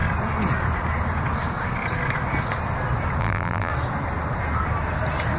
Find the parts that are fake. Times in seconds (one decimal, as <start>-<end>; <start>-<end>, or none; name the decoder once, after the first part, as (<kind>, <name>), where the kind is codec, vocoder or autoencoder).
3.2-3.7 (vocoder, BigVGAN v2)